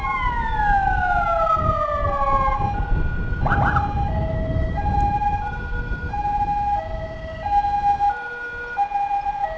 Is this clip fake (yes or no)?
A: no